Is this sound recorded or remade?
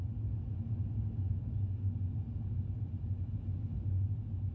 recorded